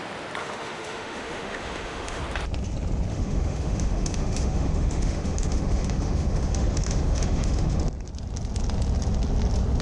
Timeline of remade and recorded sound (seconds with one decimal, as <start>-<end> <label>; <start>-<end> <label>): 0.0-0.4 recorded; 0.4-2.2 remade; 2.2-3.1 recorded; 3.1-7.8 remade; 7.8-9.8 recorded

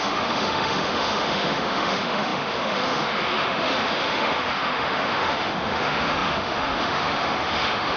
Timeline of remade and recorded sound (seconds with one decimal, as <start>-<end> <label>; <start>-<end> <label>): 0.0-8.0 remade

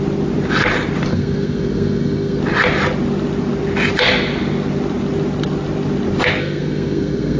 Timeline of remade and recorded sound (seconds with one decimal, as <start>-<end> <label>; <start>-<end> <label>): 0.0-1.1 recorded; 1.1-2.4 remade; 2.4-6.4 recorded; 6.4-7.4 remade

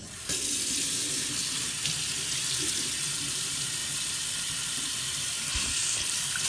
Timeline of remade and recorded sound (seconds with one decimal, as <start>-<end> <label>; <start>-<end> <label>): 0.0-1.0 remade; 1.0-2.6 recorded; 2.6-3.8 remade; 3.8-4.6 recorded; 4.6-6.5 remade

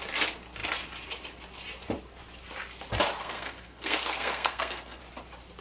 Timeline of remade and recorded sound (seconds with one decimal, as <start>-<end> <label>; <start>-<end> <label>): 0.0-3.2 recorded; 3.2-5.0 remade; 5.0-5.6 recorded

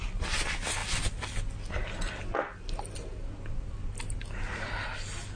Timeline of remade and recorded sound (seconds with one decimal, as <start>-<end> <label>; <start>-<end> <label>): 0.0-5.4 recorded

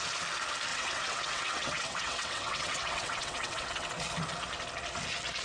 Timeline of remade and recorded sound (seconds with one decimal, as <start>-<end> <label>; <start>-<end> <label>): 0.0-0.7 recorded; 0.7-3.9 remade; 3.9-5.4 recorded